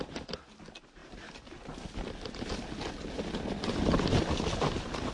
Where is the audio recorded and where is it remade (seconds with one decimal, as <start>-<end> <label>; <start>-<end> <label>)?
0.0-5.1 recorded